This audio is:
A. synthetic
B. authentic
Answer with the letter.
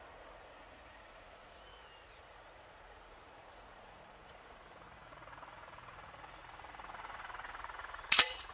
A